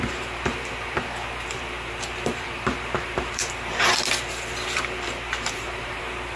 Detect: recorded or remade remade